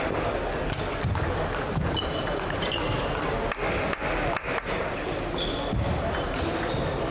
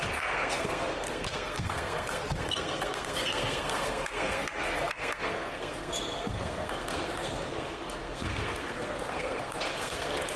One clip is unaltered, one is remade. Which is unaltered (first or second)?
first